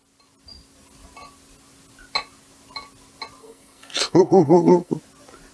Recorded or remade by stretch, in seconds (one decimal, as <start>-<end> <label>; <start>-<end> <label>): 0.0-3.4 recorded; 3.4-4.9 remade; 4.9-5.5 recorded